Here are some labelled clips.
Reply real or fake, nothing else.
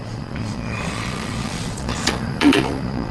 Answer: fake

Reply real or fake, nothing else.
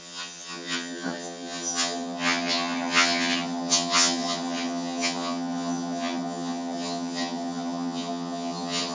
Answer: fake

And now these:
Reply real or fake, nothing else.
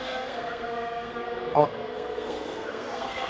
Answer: fake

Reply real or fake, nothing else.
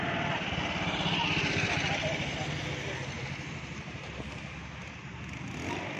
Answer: real